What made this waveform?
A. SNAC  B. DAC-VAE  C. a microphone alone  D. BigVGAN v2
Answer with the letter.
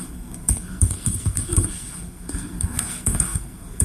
A